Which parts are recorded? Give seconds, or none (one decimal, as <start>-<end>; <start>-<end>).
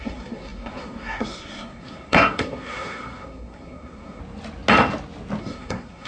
4.2-5.4